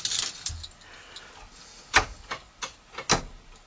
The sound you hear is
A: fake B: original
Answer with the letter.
B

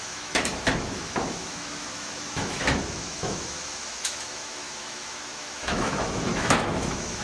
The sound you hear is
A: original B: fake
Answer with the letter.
B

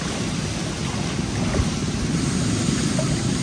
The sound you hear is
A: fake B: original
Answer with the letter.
B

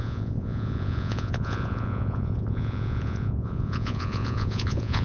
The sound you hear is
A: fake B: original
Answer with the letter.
A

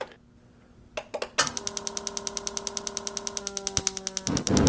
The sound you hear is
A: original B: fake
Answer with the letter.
A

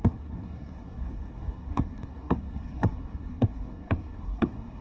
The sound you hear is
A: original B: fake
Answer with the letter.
B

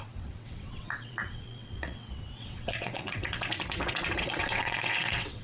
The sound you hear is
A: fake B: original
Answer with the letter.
A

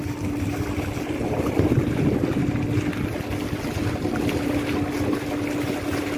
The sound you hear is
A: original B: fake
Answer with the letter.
A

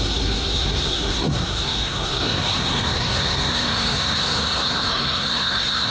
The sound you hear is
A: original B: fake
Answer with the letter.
B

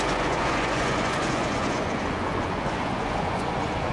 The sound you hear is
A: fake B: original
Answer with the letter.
A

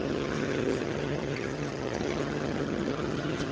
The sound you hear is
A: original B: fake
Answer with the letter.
B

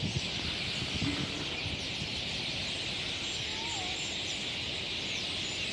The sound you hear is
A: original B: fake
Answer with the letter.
A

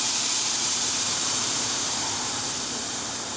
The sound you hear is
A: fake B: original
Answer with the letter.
A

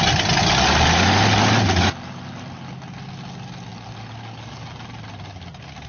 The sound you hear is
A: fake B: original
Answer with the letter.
B